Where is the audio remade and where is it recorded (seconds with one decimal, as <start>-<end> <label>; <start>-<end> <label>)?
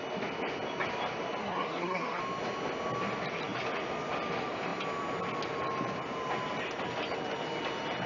0.0-1.4 recorded; 1.4-2.2 remade; 2.2-8.1 recorded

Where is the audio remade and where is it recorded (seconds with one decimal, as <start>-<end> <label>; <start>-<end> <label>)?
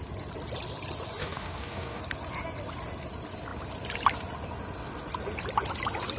0.0-1.2 recorded; 1.2-2.0 remade; 2.0-6.2 recorded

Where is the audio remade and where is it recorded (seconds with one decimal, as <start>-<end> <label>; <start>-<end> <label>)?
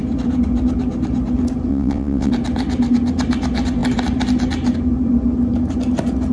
0.0-1.7 recorded; 1.7-2.3 remade; 2.3-6.3 recorded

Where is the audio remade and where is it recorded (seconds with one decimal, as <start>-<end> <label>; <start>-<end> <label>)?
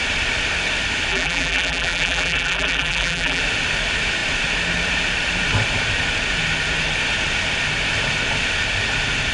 0.0-1.1 recorded; 1.1-3.4 remade; 3.4-9.3 recorded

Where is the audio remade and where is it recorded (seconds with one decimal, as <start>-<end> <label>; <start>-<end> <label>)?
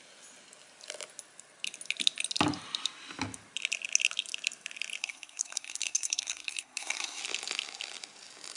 0.0-5.0 recorded; 5.0-7.2 remade; 7.2-8.6 recorded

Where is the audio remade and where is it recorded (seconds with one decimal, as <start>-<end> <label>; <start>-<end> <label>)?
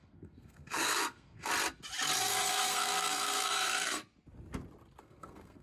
0.0-1.5 remade; 1.5-2.2 recorded; 2.2-4.0 remade; 4.0-5.0 recorded; 5.0-5.6 remade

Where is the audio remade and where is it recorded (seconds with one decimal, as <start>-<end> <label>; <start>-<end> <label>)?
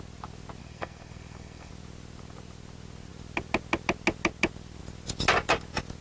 0.0-0.6 recorded; 0.6-1.7 remade; 1.7-6.0 recorded